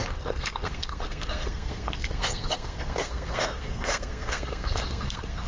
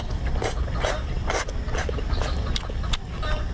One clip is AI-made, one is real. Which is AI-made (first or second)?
first